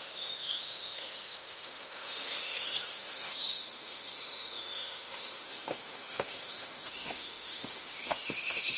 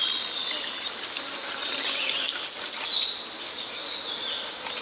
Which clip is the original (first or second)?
second